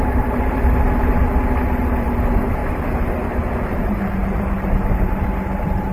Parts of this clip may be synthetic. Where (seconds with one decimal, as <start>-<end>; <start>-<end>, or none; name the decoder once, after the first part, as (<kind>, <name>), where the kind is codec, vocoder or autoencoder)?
0.0-1.2 (vocoder, BigVGAN v2); 1.8-2.6; 3.7-5.9